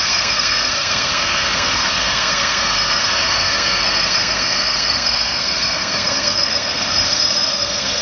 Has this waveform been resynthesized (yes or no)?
yes